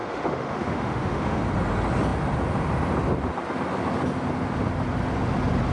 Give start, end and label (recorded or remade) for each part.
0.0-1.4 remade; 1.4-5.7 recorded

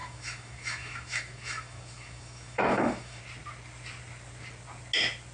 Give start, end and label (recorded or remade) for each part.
0.0-3.2 remade; 3.2-5.3 recorded

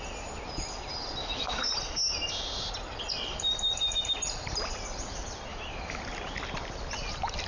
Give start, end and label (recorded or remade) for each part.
0.0-1.2 recorded; 1.2-1.7 remade; 1.7-5.5 recorded; 5.5-6.0 remade; 6.0-7.5 recorded

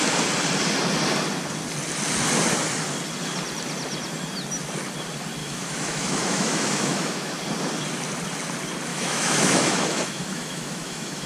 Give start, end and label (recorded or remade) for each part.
0.0-5.4 recorded; 5.4-7.4 remade; 7.4-8.9 recorded; 8.9-11.3 remade

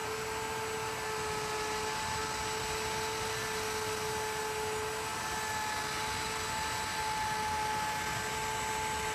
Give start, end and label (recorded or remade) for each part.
0.0-9.1 recorded

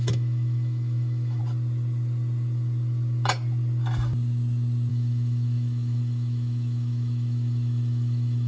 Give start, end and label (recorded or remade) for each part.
0.0-1.4 remade; 1.4-4.9 recorded; 4.9-8.5 remade